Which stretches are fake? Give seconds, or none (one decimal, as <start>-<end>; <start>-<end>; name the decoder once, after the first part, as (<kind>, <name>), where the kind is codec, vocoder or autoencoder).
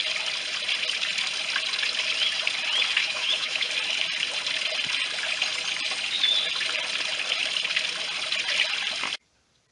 3.0-3.7 (autoencoder, DAC-VAE)